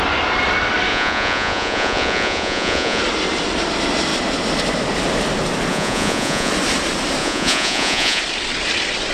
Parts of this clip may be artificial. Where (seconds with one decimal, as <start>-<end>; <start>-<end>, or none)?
0.9-3.0; 5.7-6.5; 7.2-8.2